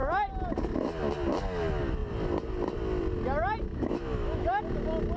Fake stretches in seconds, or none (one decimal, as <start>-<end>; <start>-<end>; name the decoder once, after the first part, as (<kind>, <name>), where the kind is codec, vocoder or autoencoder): 3.7-4.6 (autoencoder, DAC-VAE)